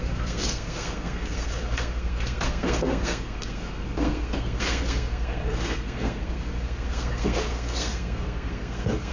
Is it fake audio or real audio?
fake